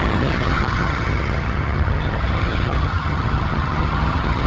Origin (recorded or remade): remade